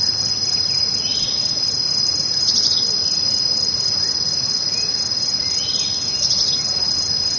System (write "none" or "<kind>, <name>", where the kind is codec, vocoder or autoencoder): none